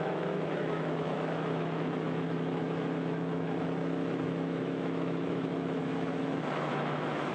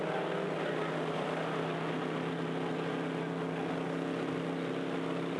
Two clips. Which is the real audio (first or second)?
second